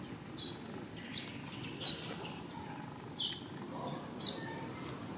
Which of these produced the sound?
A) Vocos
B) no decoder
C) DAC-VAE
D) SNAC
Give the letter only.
B